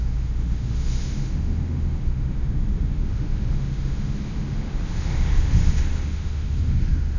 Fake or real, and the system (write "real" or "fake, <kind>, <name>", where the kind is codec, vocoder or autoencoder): fake, autoencoder, DAC-VAE